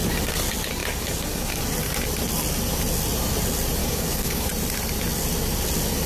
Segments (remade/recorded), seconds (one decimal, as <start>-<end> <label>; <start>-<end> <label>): 0.0-0.8 recorded; 0.8-1.6 remade; 1.6-3.8 recorded; 3.8-4.5 remade; 4.5-6.1 recorded